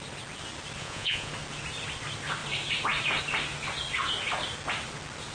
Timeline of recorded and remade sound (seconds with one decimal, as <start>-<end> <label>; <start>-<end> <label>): 0.0-0.8 recorded; 0.8-1.3 remade; 1.3-5.3 recorded